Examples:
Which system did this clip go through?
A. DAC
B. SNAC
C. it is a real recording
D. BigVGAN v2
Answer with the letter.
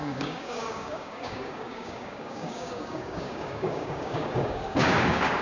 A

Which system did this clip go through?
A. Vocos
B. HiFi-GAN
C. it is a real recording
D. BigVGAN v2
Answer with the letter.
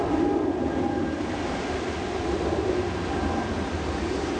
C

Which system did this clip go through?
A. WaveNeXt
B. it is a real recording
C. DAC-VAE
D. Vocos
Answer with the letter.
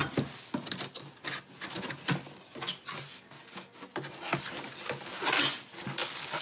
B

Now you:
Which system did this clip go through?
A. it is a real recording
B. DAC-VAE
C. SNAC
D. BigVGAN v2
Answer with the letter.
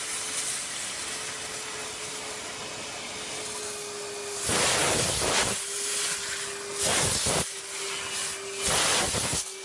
A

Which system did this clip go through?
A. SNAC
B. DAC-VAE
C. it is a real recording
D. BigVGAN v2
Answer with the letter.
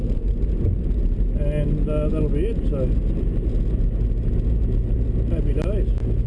C